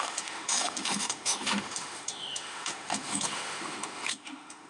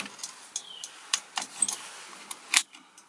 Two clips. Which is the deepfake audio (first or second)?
first